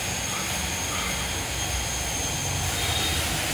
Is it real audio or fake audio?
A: real